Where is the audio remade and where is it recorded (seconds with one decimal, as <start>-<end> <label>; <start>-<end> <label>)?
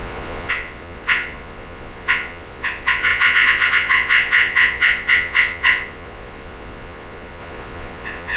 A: 0.0-8.4 remade